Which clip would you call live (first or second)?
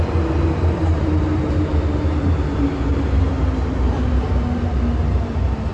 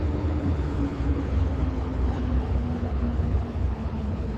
first